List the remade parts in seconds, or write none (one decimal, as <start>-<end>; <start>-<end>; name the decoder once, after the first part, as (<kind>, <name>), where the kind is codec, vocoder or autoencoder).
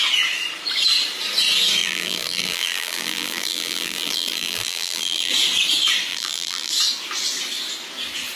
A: 1.8-5.3 (vocoder, BigVGAN v2); 6.1-6.7